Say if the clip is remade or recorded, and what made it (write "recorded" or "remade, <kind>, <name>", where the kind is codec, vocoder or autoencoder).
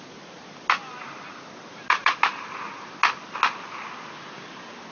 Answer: recorded